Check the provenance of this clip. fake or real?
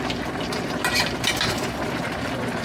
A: real